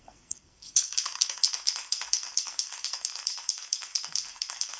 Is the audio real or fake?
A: fake